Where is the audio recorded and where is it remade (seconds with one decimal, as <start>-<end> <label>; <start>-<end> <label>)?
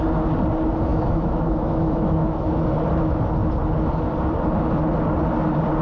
0.0-0.9 recorded; 0.9-2.5 remade; 2.5-5.8 recorded